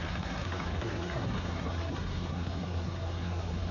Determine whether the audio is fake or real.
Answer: fake